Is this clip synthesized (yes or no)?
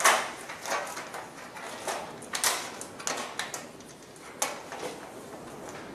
no